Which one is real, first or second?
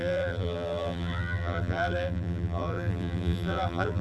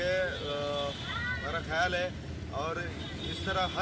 second